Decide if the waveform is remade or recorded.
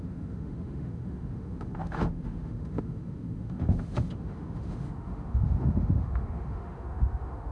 remade